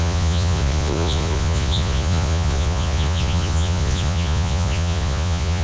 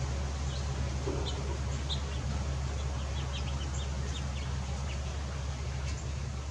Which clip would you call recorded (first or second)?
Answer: second